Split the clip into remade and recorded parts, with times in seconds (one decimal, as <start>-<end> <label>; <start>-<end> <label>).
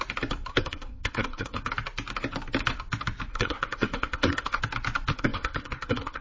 0.0-0.5 recorded; 0.5-1.7 remade; 1.7-3.3 recorded; 3.3-4.6 remade; 4.6-5.1 recorded; 5.1-6.2 remade